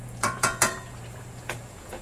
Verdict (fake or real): fake